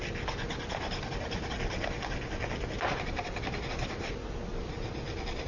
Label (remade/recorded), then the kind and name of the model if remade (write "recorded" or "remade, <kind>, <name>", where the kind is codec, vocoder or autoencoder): recorded